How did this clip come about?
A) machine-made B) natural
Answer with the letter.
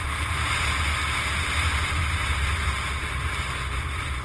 B